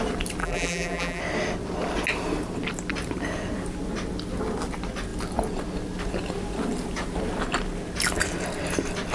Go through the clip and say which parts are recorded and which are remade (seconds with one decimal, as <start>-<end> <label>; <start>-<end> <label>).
0.0-0.4 recorded; 0.4-1.2 remade; 1.2-9.1 recorded